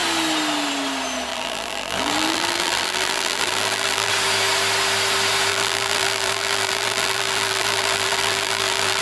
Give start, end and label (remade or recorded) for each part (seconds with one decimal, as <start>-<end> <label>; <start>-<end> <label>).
0.0-1.3 recorded; 1.3-4.1 remade; 4.1-5.5 recorded; 5.5-9.0 remade